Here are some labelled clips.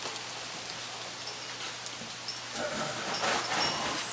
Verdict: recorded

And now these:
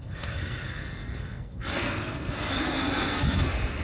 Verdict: remade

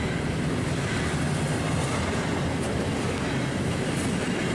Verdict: recorded